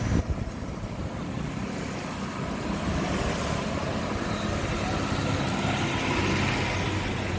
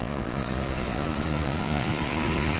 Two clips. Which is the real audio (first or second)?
first